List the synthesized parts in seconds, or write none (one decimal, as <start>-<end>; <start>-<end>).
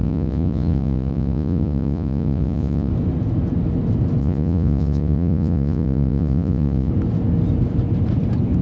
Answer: 0.0-2.9; 4.2-6.9